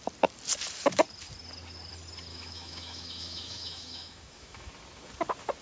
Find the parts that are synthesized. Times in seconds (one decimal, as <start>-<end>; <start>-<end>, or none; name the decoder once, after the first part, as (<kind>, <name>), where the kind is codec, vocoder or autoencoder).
2.3-4.7 (autoencoder, DAC-VAE)